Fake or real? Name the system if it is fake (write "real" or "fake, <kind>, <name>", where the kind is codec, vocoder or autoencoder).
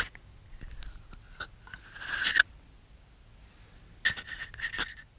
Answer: real